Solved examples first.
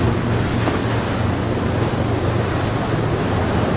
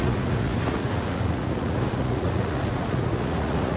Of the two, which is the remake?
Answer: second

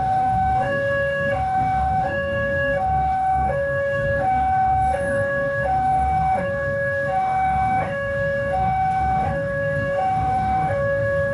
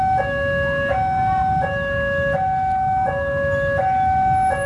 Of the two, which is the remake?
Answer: first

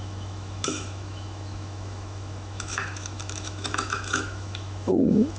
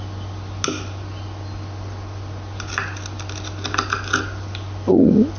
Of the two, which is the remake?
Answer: first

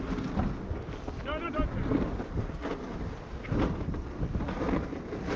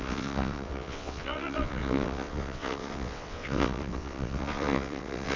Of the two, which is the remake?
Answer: second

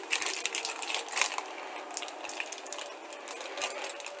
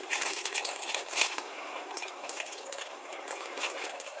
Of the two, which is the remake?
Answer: second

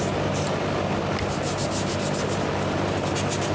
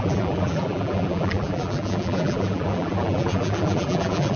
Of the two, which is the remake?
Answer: second